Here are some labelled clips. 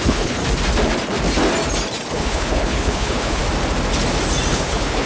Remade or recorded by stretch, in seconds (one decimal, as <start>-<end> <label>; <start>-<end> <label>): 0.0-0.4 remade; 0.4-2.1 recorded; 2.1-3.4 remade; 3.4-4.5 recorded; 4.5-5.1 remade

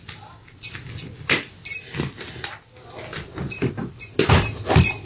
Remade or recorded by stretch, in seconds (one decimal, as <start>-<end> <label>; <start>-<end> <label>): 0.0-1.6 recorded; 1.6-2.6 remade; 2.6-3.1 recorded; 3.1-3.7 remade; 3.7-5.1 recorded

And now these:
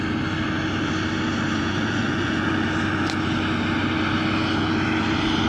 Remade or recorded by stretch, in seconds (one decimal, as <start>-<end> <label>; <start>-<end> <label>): 0.0-1.6 recorded; 1.6-2.5 remade; 2.5-5.5 recorded

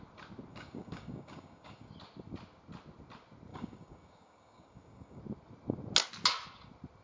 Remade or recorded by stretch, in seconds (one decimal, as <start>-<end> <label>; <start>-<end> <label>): 0.0-0.5 recorded; 0.5-1.9 remade; 1.9-3.5 recorded; 3.5-5.2 remade; 5.2-7.0 recorded

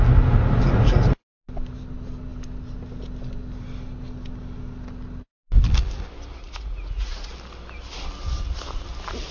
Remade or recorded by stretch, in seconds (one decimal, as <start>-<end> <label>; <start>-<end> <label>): 0.0-6.4 recorded; 6.4-7.3 remade; 7.3-9.3 recorded

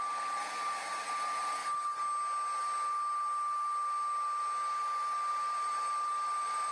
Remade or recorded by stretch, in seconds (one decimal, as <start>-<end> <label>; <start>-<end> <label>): 0.0-1.6 remade; 1.6-5.3 recorded; 5.3-6.7 remade